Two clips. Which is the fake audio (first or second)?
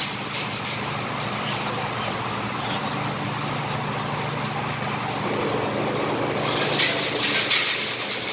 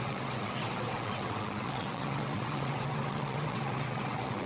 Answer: second